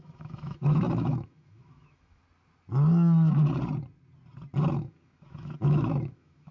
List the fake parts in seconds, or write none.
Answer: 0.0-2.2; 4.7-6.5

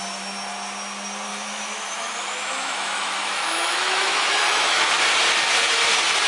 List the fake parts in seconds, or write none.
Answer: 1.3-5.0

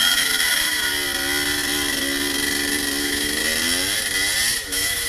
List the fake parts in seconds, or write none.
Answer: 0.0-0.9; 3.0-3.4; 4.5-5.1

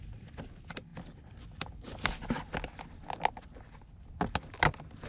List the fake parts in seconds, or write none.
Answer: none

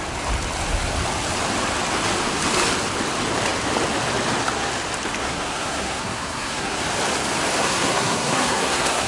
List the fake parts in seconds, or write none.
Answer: 5.2-6.8; 7.6-9.1